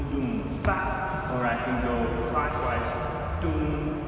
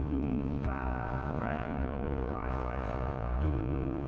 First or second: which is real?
first